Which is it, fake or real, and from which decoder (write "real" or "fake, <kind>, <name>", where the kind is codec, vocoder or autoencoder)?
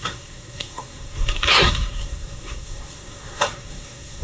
fake, codec, SNAC